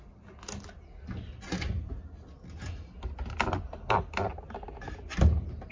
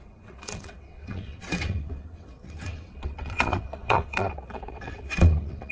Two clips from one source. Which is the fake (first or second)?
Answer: second